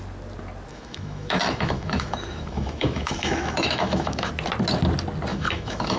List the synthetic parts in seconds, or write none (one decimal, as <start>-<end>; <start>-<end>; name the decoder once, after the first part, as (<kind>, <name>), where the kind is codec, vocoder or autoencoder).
0.7-4.3 (autoencoder, DAC-VAE); 5.3-6.0